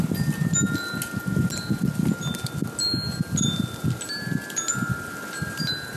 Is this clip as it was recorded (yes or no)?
yes